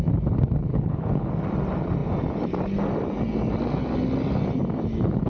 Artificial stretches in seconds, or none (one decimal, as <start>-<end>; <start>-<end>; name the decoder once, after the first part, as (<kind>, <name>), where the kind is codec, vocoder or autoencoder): 0.7-1.3 (codec, HILCodec)